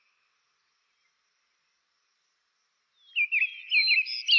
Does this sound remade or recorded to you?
recorded